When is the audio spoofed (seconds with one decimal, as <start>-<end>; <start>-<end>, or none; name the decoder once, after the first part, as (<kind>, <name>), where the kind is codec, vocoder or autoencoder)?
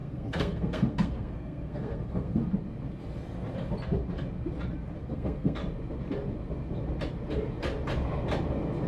0.0-2.4 (codec, SNAC); 5.0-5.6